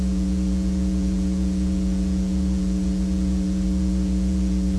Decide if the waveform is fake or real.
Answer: fake